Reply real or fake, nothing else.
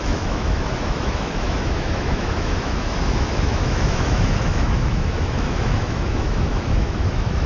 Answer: fake